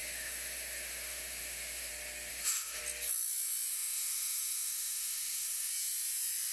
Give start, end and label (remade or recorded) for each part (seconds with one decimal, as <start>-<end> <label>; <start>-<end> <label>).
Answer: 0.0-1.9 remade; 1.9-2.3 recorded; 2.3-2.8 remade; 2.8-3.7 recorded; 3.7-5.7 remade; 5.7-6.5 recorded